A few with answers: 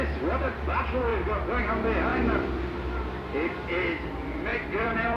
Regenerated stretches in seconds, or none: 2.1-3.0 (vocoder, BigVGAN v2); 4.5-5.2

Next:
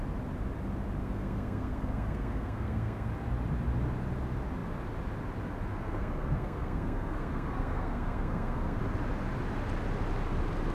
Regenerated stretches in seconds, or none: 1.0-3.1 (codec, SNAC); 5.7-8.8

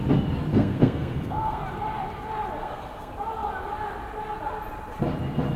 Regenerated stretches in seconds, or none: 0.5-1.6 (codec, SNAC); 2.6-3.1

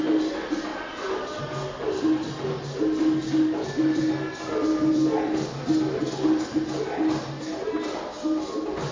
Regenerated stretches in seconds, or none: none